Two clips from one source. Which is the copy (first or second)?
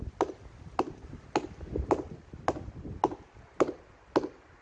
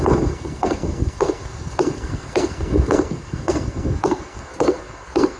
second